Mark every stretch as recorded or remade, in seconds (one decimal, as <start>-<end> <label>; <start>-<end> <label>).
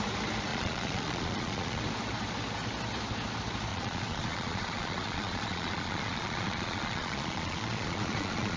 0.0-0.5 recorded; 0.5-1.8 remade; 1.8-3.7 recorded; 3.7-8.6 remade